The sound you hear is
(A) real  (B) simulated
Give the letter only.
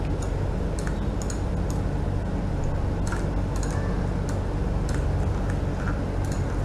A